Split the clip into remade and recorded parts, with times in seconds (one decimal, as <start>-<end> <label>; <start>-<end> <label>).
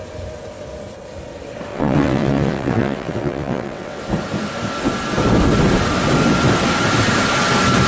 0.0-1.7 recorded; 1.7-4.0 remade; 4.0-7.9 recorded